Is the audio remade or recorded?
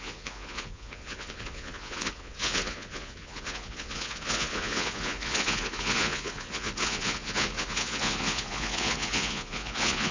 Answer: remade